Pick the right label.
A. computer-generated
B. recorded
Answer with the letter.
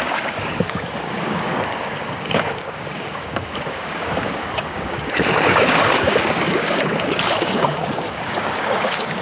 A